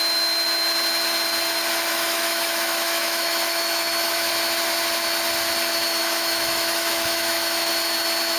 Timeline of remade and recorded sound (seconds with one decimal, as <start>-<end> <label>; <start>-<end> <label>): 0.0-1.9 recorded; 1.9-4.3 remade; 4.3-6.0 recorded; 6.0-7.7 remade; 7.7-8.4 recorded